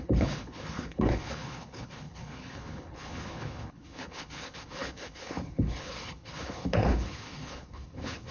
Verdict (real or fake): fake